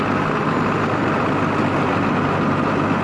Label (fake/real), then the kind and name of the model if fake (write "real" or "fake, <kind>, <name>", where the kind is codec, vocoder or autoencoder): real